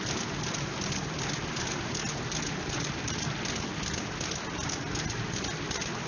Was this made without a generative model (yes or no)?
yes